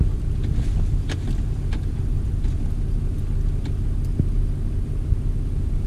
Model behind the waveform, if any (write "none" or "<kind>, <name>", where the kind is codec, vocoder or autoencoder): none